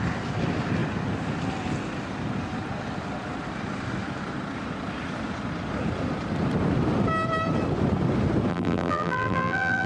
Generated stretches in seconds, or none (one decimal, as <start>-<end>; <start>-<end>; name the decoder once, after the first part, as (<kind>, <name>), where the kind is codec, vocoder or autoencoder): 8.5-9.9 (vocoder, BigVGAN v2)